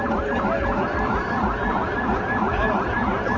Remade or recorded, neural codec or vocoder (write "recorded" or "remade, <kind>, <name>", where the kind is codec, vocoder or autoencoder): remade, vocoder, BigVGAN v2